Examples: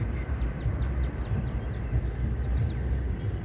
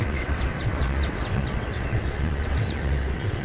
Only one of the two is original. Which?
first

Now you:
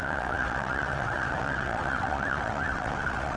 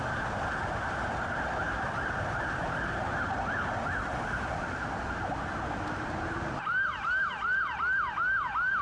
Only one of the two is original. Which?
second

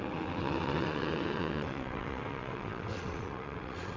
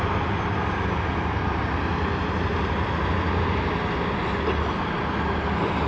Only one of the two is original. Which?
second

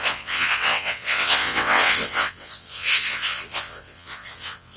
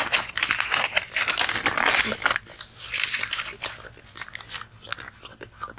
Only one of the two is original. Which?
second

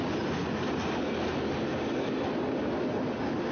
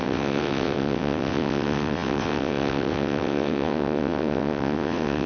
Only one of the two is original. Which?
first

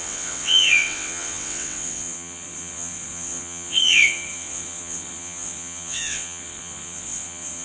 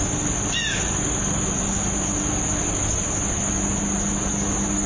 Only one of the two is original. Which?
second